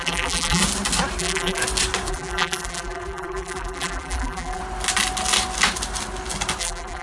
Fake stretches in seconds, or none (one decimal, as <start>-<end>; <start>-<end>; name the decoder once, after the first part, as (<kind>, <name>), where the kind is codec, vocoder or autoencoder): 0.0-0.6 (vocoder, BigVGAN v2); 1.2-1.6; 2.1-4.6; 6.6-7.0